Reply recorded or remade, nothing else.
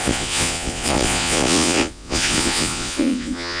remade